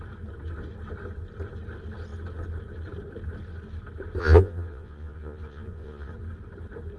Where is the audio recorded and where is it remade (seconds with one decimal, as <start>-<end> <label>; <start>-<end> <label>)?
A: 0.0-4.2 recorded; 4.2-6.1 remade; 6.1-7.0 recorded